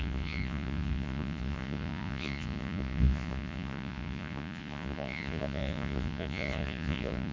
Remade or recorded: remade